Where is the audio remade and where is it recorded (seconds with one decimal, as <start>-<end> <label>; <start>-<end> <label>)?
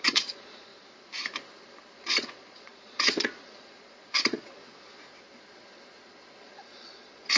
0.0-0.7 remade; 0.7-2.0 recorded; 2.0-4.6 remade; 4.6-6.4 recorded; 6.4-7.4 remade